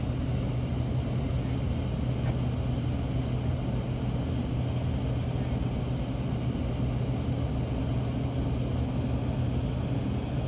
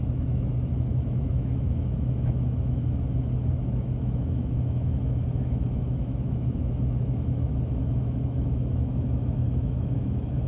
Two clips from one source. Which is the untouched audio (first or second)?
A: first